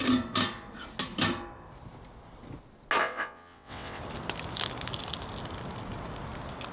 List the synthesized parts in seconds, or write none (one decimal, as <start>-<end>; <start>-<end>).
3.0-4.0